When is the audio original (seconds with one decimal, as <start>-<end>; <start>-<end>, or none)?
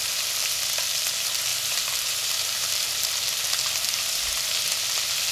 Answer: 0.0-5.3